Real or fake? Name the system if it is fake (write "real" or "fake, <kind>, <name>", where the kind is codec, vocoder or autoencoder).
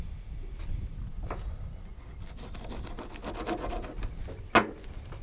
real